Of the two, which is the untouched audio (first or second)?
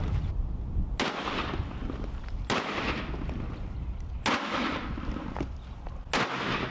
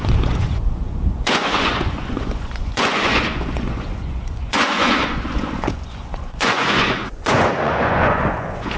first